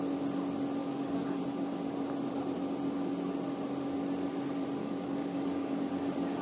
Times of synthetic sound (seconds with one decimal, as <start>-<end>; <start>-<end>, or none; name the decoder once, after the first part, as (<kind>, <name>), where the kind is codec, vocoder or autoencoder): 0.8-1.4 (codec, DAC); 4.8-5.9